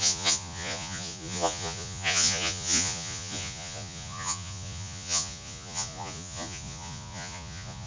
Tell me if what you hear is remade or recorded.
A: remade